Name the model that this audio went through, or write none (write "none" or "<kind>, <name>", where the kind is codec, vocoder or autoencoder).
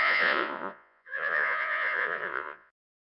vocoder, Vocos